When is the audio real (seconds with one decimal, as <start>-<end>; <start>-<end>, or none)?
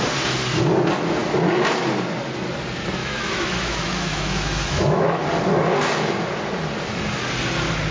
0.0-3.0; 5.2-7.9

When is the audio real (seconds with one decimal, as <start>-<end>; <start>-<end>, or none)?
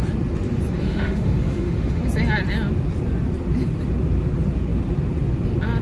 0.0-0.8; 2.0-5.8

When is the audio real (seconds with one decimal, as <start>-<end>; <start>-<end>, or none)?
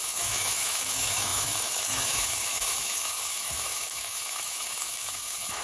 none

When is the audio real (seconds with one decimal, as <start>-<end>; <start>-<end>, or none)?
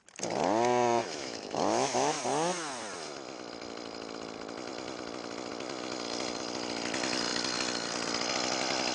0.0-1.0; 2.2-8.9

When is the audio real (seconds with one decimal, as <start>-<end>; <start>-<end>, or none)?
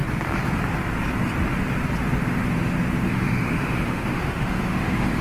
0.0-3.1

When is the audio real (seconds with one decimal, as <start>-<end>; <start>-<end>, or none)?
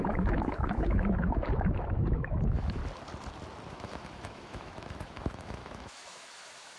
2.8-3.7